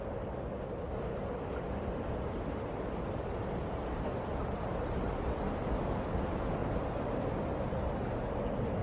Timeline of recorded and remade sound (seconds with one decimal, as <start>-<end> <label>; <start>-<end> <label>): 0.0-8.8 recorded